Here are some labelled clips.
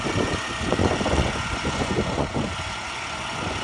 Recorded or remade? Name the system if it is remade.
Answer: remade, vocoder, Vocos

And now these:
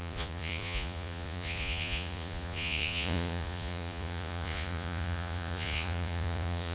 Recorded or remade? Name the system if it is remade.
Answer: remade, vocoder, Vocos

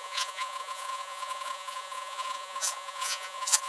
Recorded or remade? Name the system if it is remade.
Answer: remade, vocoder, Vocos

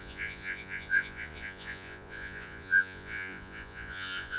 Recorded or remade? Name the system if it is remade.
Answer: remade, vocoder, Vocos